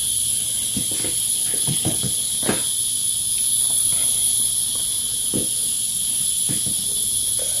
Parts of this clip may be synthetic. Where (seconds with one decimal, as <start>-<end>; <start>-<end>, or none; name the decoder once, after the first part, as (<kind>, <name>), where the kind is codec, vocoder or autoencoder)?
1.3-2.2 (codec, HILCodec)